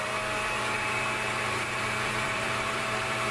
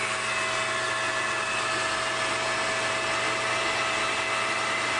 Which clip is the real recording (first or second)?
second